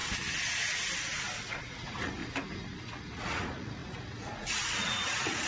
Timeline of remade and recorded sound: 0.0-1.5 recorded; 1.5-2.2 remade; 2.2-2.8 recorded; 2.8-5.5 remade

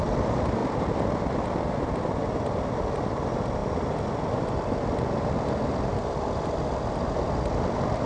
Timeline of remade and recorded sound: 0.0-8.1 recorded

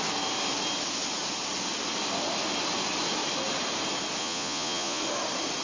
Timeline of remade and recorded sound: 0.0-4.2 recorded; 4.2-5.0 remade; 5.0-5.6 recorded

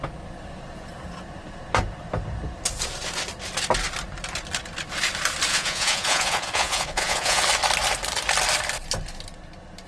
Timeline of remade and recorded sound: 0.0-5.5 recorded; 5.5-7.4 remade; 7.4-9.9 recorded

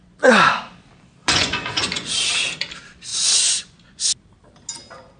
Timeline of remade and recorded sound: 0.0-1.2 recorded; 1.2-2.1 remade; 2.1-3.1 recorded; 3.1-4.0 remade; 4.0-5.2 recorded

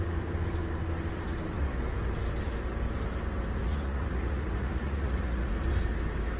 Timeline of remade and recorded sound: 0.0-3.6 recorded; 3.6-5.5 remade; 5.5-6.4 recorded